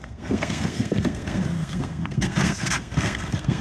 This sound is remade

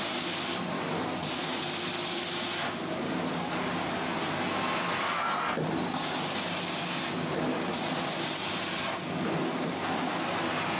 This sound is recorded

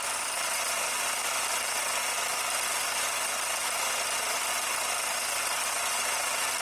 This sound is recorded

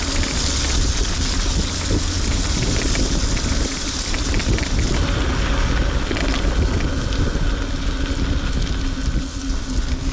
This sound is recorded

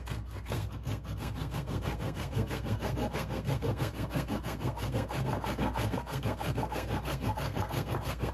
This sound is remade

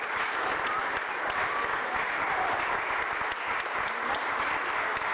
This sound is recorded